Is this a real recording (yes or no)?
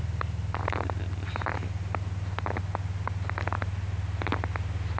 yes